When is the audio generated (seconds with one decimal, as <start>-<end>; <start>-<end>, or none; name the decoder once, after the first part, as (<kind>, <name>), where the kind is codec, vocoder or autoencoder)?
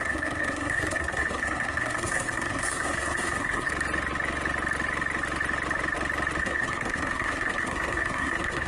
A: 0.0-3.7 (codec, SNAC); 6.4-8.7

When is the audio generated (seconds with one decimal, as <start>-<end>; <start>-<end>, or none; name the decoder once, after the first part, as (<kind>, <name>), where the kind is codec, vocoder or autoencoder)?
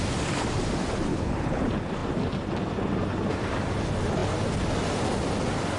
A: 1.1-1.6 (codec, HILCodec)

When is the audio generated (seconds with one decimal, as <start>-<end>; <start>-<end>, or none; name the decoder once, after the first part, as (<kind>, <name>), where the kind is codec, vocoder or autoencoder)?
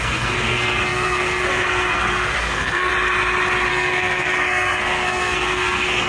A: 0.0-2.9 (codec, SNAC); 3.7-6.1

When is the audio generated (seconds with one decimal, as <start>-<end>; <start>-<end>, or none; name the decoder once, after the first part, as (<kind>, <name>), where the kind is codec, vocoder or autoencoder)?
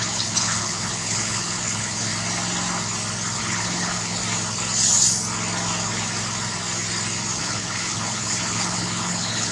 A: 0.0-2.1 (codec, HILCodec); 3.4-4.2; 7.4-9.5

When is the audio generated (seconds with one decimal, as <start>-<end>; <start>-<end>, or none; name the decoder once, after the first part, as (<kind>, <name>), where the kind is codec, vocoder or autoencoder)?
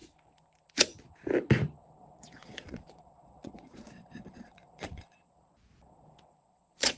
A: 2.0-7.0 (vocoder, Vocos)